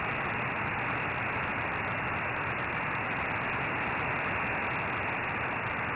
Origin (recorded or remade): recorded